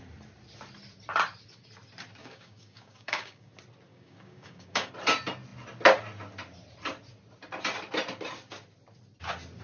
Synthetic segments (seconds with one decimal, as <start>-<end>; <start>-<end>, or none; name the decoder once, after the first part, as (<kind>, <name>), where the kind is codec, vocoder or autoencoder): 2.2-3.5 (codec, DAC); 3.9-4.9